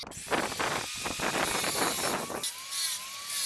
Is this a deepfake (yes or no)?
no